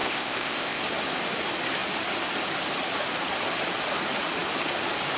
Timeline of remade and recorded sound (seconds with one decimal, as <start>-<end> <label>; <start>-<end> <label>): 0.0-0.8 remade; 0.8-5.2 recorded